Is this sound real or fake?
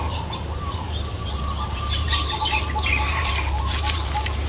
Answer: fake